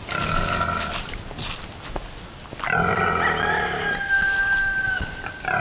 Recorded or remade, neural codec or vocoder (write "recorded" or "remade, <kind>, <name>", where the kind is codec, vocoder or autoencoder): recorded